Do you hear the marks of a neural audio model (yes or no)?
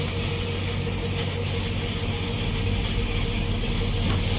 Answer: no